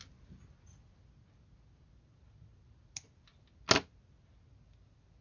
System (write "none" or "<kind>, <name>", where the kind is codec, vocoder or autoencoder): none